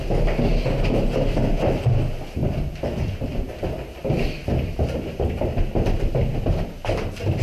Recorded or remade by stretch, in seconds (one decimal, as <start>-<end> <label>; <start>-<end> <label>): 0.0-7.4 recorded